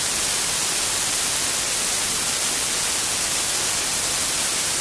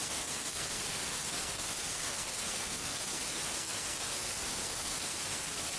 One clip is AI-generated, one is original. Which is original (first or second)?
first